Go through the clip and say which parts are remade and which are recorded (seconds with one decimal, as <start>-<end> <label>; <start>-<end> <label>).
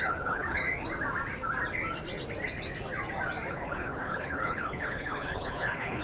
0.0-0.6 remade; 0.6-3.5 recorded; 3.5-6.0 remade